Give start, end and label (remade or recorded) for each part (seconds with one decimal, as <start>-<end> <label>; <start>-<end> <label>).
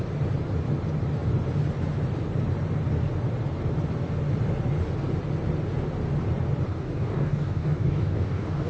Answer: 0.0-6.7 recorded; 6.7-8.7 remade